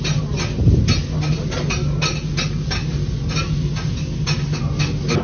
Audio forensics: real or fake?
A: real